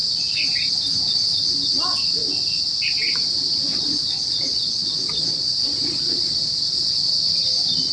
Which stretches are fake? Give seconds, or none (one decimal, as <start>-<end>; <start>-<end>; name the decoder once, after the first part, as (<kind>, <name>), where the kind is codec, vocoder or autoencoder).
3.7-7.2 (vocoder, Vocos)

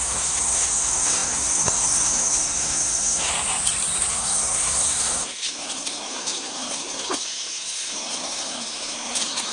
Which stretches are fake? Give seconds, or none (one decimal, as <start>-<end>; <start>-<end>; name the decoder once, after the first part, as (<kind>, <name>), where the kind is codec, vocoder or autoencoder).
0.0-3.3 (codec, SNAC); 4.1-9.5

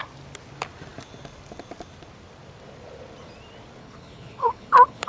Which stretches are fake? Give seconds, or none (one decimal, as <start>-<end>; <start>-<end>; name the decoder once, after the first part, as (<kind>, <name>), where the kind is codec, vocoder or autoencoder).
3.8-5.1 (codec, HILCodec)

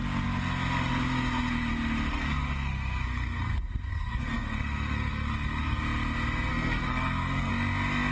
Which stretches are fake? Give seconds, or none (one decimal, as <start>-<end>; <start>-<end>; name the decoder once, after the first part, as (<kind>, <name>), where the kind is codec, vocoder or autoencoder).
2.1-5.8 (codec, SNAC); 6.5-7.5

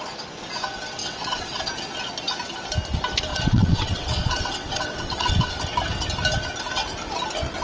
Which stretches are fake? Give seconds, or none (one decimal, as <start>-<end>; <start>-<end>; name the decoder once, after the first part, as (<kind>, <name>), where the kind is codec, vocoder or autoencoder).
1.0-1.7 (vocoder, WaveNeXt); 3.3-5.6